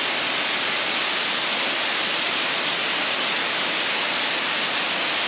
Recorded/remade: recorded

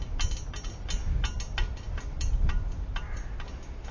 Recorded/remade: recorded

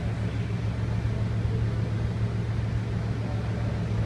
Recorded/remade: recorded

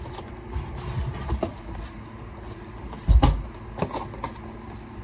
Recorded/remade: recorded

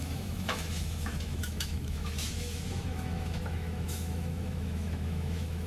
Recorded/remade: remade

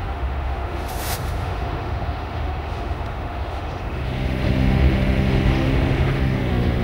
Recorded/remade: remade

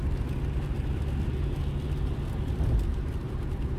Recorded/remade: recorded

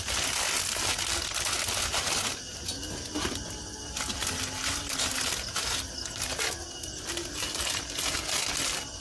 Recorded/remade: recorded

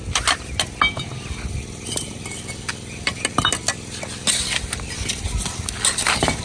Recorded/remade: recorded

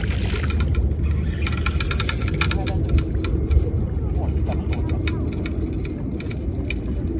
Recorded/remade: recorded